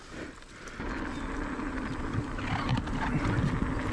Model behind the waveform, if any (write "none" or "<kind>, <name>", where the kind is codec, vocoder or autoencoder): none